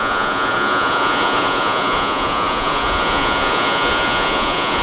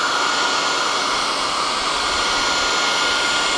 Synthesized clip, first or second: first